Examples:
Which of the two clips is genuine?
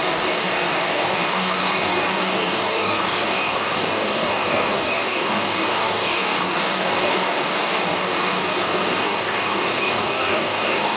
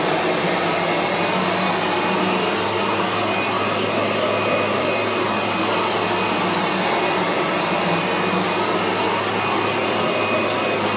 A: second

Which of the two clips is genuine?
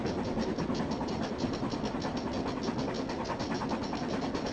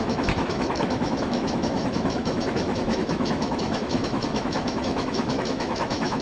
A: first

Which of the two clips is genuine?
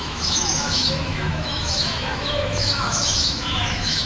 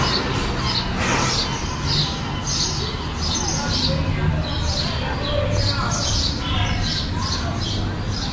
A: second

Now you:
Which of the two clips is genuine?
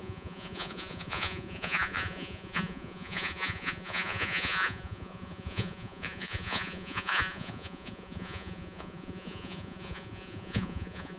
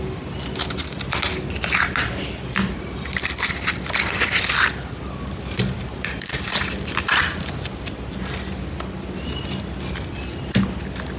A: second